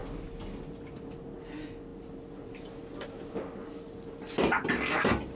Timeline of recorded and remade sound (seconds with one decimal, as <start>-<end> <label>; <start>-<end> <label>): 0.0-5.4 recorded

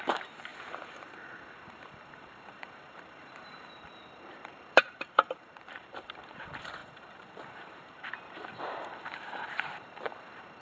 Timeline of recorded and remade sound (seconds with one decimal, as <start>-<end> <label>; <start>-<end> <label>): 0.0-10.6 remade

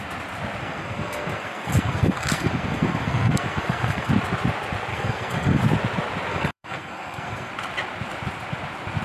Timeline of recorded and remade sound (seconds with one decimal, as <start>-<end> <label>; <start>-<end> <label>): 0.0-0.6 recorded; 0.6-4.1 remade; 4.1-4.9 recorded; 4.9-5.6 remade; 5.6-6.3 recorded; 6.3-7.5 remade; 7.5-9.0 recorded

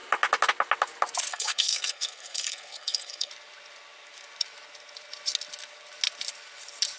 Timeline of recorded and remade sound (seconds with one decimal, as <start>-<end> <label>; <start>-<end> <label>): 0.0-1.3 recorded; 1.3-3.3 remade; 3.3-7.0 recorded